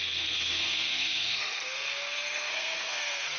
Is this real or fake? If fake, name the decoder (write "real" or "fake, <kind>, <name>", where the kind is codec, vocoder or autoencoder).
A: fake, codec, SNAC